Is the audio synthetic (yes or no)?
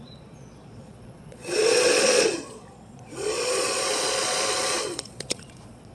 yes